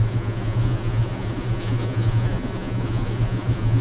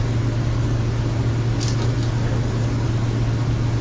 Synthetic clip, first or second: first